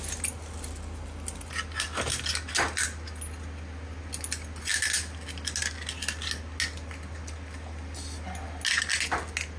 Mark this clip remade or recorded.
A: recorded